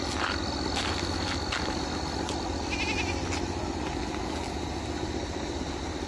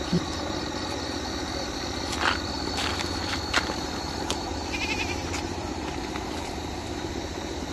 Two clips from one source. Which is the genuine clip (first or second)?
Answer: first